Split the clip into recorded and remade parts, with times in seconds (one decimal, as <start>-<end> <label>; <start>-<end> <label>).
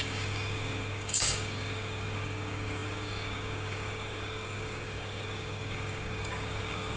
0.0-7.0 remade